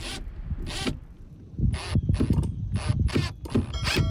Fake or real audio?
real